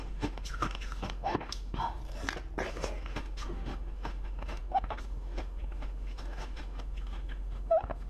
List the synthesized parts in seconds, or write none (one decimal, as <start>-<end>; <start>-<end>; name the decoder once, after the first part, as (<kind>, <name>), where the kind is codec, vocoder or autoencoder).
0.0-2.0 (autoencoder, DAC-VAE); 2.7-8.1